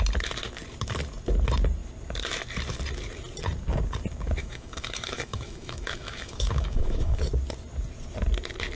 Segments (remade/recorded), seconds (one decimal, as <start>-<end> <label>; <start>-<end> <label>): 0.0-4.4 recorded; 4.4-7.2 remade; 7.2-8.7 recorded